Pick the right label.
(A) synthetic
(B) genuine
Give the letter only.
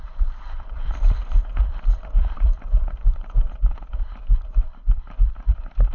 B